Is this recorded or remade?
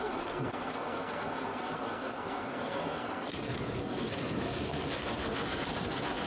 remade